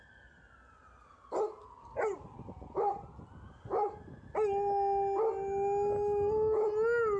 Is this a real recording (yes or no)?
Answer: yes